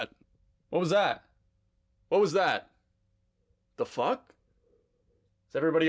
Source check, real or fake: real